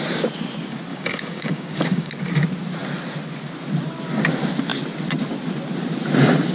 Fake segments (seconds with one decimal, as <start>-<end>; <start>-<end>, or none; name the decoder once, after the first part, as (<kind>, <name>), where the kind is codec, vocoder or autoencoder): 0.9-2.1 (codec, DAC)